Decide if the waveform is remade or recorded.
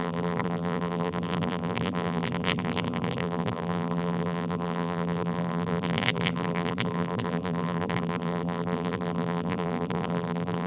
remade